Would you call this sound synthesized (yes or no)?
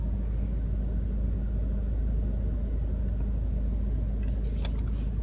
no